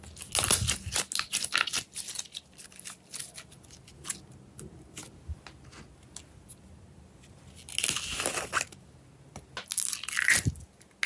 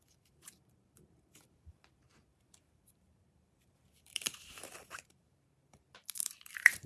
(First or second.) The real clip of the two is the first